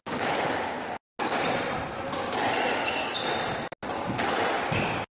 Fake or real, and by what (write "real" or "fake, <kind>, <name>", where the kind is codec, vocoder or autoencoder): real